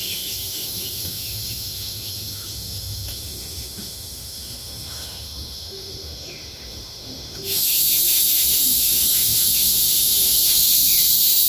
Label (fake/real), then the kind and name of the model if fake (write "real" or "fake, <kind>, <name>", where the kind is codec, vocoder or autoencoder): fake, autoencoder, DAC-VAE